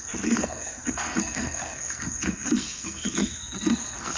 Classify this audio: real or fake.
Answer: fake